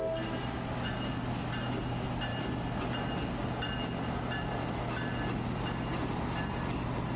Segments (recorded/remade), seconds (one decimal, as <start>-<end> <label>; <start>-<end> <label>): 0.0-7.2 recorded

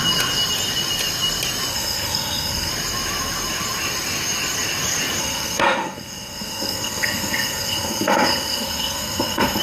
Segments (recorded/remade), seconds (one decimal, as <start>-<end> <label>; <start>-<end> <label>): 0.0-1.7 recorded; 1.7-2.7 remade; 2.7-5.2 recorded; 5.2-9.6 remade

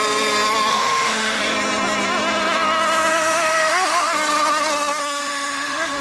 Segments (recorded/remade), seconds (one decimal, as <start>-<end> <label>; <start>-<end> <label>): 0.0-0.7 recorded; 0.7-1.4 remade; 1.4-3.1 recorded; 3.1-4.1 remade; 4.1-5.0 recorded; 5.0-6.0 remade

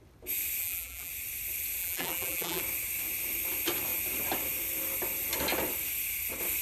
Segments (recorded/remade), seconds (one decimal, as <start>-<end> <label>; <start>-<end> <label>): 0.0-0.6 recorded; 0.6-1.1 remade; 1.1-1.8 recorded; 1.8-2.6 remade; 2.6-6.6 recorded

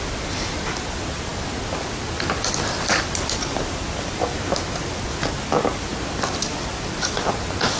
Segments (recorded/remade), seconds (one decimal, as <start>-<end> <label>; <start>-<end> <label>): 0.0-7.8 recorded

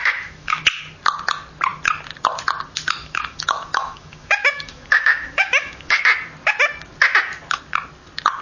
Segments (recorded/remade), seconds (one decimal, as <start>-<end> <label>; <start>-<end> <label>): 0.0-0.6 remade; 0.6-3.0 recorded; 3.0-6.0 remade; 6.0-8.4 recorded

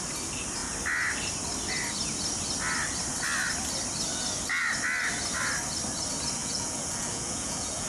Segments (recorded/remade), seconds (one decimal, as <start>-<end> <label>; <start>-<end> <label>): 0.0-6.4 recorded; 6.4-7.9 remade

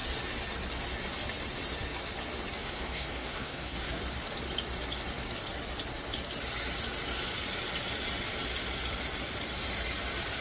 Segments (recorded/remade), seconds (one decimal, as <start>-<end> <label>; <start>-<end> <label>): 0.0-2.6 recorded; 2.6-4.0 remade; 4.0-10.4 recorded